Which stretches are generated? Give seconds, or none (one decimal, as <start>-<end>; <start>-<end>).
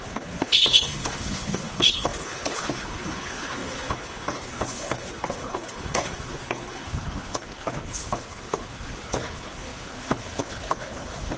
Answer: 0.0-11.4